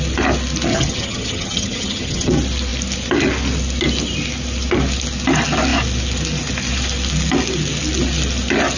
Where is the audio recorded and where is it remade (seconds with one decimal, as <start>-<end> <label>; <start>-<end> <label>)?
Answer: 0.0-0.7 recorded; 0.7-2.3 remade; 2.3-8.8 recorded